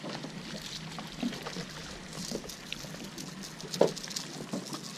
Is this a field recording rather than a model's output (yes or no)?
yes